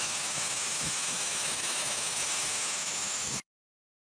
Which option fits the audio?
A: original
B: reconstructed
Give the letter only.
B